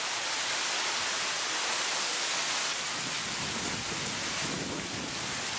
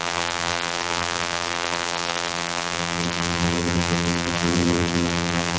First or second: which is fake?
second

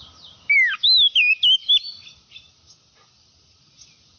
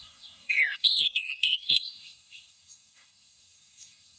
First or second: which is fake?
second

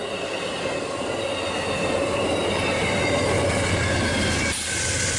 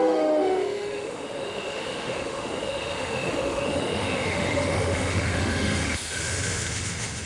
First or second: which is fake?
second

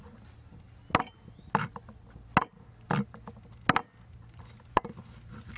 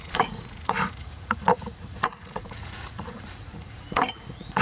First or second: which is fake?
second